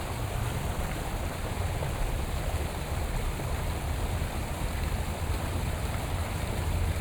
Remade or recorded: remade